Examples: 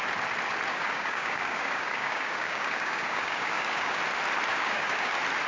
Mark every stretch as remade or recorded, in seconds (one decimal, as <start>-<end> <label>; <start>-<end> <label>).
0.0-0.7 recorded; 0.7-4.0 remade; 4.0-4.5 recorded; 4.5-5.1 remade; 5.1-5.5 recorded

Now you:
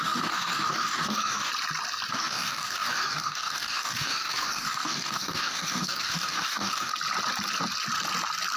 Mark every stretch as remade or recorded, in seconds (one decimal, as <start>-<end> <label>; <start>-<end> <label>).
0.0-1.5 remade; 1.5-2.1 recorded; 2.1-6.9 remade; 6.9-8.6 recorded

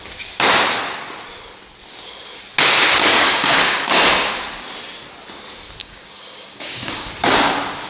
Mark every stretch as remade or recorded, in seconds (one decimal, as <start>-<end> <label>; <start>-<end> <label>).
0.0-3.1 recorded; 3.1-4.3 remade; 4.3-5.8 recorded; 5.8-7.1 remade; 7.1-7.9 recorded

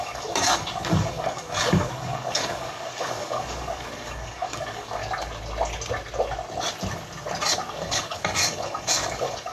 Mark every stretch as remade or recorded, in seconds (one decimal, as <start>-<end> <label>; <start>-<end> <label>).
0.0-5.0 remade; 5.0-7.7 recorded; 7.7-9.5 remade

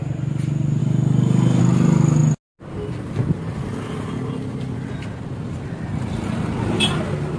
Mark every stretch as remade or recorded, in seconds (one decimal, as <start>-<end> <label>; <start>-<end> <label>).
0.0-0.8 recorded; 0.8-1.6 remade; 1.6-7.4 recorded